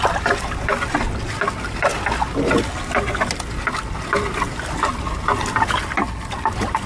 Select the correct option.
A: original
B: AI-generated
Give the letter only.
A